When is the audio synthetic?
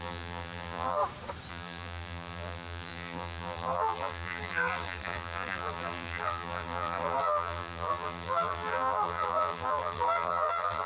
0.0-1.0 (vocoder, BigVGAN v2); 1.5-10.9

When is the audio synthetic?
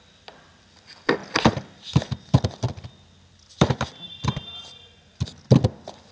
none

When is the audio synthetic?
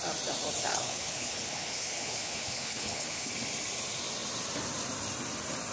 0.7-3.3 (codec, HILCodec)